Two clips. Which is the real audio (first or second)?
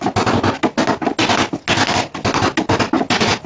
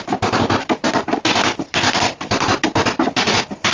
first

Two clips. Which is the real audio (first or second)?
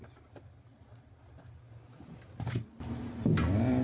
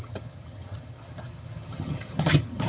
first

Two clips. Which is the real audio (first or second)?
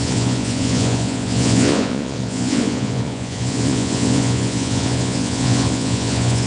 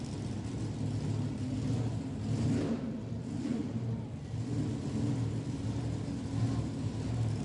second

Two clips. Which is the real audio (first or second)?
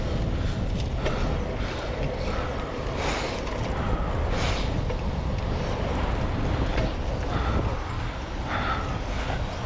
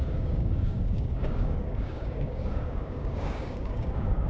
first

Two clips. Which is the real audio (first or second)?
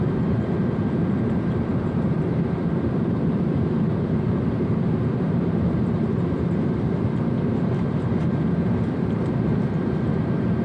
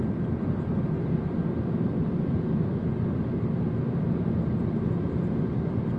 second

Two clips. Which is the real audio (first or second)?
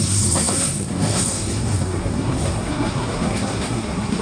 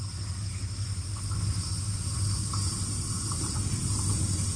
second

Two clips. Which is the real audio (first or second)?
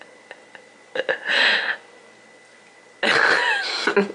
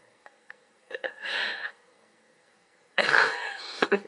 first